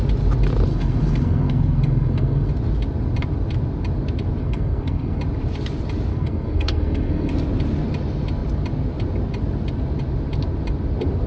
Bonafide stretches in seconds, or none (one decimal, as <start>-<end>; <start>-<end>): 0.0-0.7; 2.5-4.4; 5.2-6.1; 7.3-11.3